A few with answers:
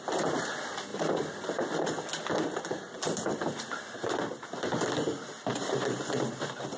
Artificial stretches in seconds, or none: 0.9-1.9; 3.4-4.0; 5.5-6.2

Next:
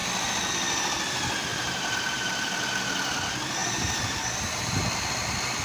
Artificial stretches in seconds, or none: 1.5-2.5; 3.6-4.9

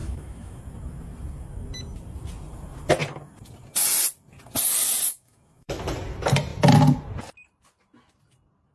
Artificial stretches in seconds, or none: 0.0-0.6; 5.1-5.8

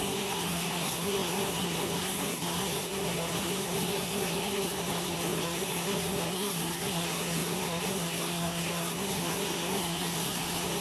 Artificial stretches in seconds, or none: 0.0-10.8

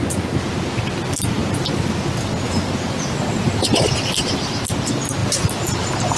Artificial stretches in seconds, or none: 1.4-4.1